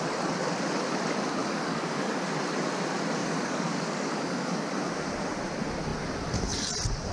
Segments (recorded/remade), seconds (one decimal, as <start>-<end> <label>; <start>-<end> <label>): 0.0-1.4 recorded; 1.4-2.2 remade; 2.2-3.2 recorded; 3.2-4.7 remade; 4.7-7.1 recorded